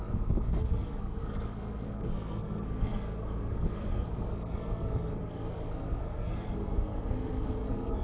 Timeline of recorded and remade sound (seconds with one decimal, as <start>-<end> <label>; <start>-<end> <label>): 0.0-8.0 remade

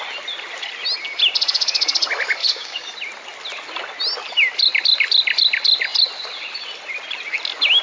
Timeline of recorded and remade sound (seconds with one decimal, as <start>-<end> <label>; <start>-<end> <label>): 0.0-2.4 recorded; 2.4-2.9 remade; 2.9-7.8 recorded

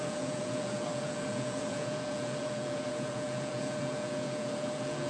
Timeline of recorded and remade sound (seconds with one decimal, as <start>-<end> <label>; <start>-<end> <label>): 0.0-5.1 remade

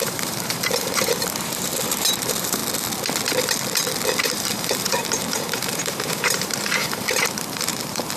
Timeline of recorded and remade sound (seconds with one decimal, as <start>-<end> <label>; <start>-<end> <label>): 0.0-2.6 remade; 2.6-4.2 recorded; 4.2-8.2 remade

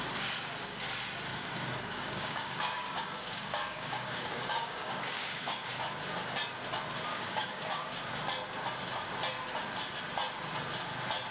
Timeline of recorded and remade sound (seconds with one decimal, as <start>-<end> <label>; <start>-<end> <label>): 0.0-1.3 recorded; 1.3-5.7 remade; 5.7-7.1 recorded; 7.1-8.1 remade; 8.1-11.3 recorded

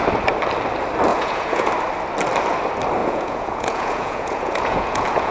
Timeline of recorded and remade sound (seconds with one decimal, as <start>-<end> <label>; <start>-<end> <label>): 0.0-1.1 recorded; 1.1-1.7 remade; 1.7-3.0 recorded; 3.0-5.3 remade

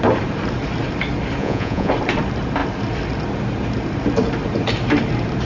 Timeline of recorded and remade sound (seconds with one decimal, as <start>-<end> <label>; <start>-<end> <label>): 0.0-1.4 recorded; 1.4-1.9 remade; 1.9-5.5 recorded